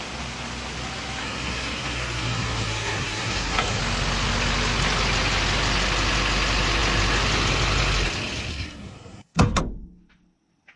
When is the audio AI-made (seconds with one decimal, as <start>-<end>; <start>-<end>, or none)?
1.2-3.8; 8.5-9.6